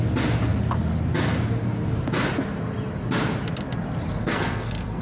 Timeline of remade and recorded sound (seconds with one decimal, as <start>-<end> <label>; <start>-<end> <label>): 0.0-4.2 recorded; 4.2-5.0 remade